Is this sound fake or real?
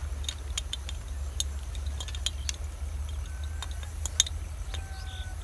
real